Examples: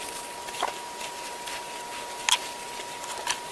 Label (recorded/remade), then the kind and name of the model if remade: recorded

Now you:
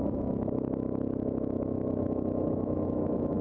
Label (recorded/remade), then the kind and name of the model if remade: remade, autoencoder, DAC-VAE